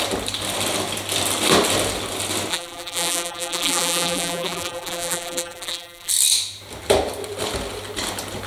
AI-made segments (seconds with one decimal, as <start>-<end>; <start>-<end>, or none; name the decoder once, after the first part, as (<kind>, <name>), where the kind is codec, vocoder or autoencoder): 2.5-6.1 (vocoder, BigVGAN v2)